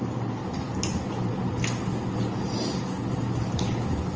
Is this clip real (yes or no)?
yes